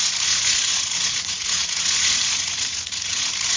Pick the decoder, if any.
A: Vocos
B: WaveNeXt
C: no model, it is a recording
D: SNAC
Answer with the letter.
A